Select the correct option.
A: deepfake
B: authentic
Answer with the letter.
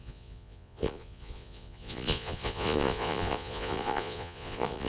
A